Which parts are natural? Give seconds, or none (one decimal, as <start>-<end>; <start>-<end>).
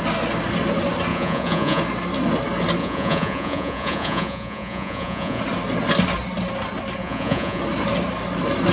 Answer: 0.0-1.1; 1.8-2.8; 5.4-7.0; 7.6-8.7